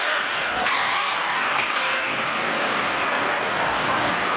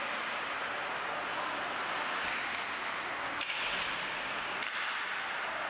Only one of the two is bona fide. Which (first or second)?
second